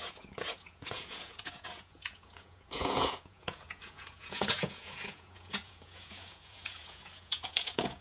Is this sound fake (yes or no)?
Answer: yes